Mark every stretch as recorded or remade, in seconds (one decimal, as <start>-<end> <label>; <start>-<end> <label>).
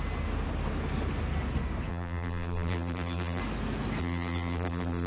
0.0-1.9 recorded; 1.9-3.4 remade; 3.4-4.0 recorded; 4.0-5.1 remade